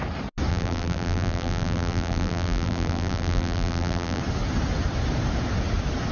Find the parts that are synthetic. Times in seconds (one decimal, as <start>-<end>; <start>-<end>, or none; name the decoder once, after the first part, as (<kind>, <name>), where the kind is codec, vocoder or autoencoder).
0.5-4.2 (vocoder, BigVGAN v2)

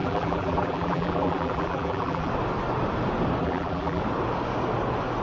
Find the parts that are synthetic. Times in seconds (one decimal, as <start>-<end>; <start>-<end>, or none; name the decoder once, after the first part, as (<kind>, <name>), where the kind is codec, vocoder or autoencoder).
0.0-2.3 (vocoder, BigVGAN v2); 3.4-4.0

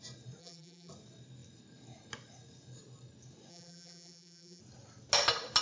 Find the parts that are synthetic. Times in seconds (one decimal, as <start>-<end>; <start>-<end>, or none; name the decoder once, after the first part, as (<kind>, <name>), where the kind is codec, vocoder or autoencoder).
0.4-0.9 (vocoder, BigVGAN v2); 3.5-4.6

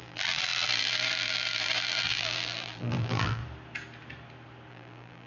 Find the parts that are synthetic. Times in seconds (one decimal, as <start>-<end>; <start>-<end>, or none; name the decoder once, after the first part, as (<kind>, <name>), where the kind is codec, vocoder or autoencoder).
0.0-3.4 (vocoder, BigVGAN v2); 4.7-5.3

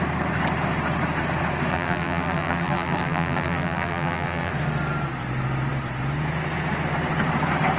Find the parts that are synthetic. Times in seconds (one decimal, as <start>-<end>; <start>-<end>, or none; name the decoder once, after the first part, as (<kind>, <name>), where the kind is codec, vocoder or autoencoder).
1.7-4.5 (vocoder, BigVGAN v2)

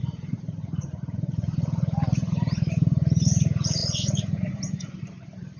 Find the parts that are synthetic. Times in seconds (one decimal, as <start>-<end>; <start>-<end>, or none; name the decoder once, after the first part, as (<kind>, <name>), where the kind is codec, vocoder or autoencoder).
0.0-5.6 (vocoder, BigVGAN v2)